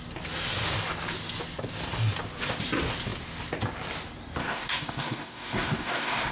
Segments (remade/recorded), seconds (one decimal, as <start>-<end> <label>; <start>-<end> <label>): 0.0-4.4 recorded; 4.4-6.3 remade